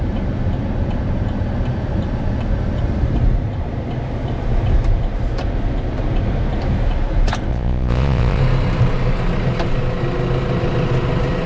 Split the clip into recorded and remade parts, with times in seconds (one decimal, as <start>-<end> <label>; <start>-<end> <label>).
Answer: 0.0-7.5 recorded; 7.5-8.4 remade; 8.4-11.5 recorded